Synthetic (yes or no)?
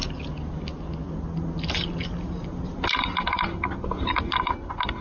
no